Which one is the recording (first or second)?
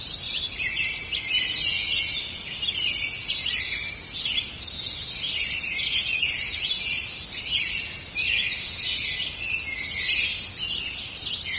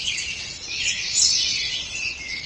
first